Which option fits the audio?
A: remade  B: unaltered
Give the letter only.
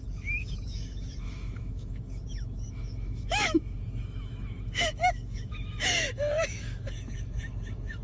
A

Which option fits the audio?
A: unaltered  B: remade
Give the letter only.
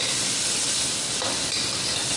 A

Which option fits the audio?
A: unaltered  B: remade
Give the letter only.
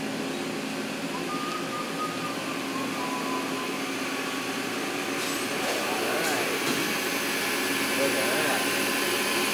A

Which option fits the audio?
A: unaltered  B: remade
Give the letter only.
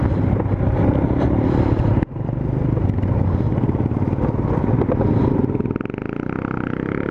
A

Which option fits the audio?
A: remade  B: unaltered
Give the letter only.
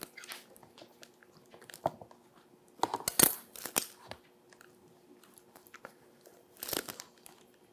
B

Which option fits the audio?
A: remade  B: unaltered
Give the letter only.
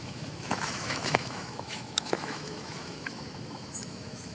A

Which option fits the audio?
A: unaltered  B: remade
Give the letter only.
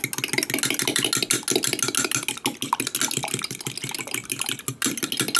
A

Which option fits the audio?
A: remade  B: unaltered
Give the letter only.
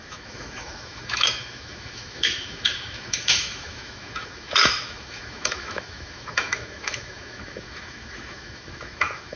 A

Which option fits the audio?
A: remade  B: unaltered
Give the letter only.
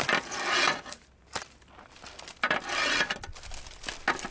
B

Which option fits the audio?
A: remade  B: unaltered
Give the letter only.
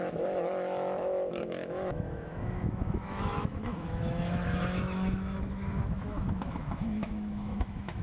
A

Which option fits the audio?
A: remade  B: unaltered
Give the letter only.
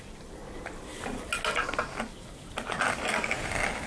B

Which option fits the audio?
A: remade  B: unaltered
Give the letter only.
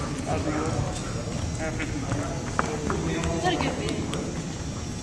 B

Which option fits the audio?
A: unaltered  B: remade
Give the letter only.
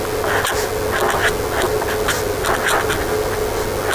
A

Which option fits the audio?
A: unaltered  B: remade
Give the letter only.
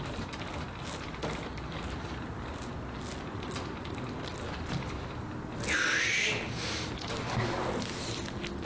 A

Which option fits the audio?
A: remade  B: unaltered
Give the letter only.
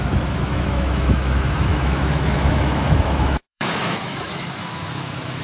A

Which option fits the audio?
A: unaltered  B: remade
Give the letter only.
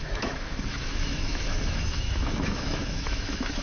B